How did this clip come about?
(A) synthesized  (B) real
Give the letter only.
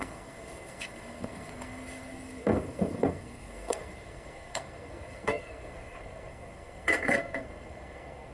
A